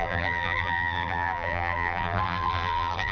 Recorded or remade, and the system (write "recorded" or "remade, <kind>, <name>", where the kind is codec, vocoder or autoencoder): remade, vocoder, BigVGAN v2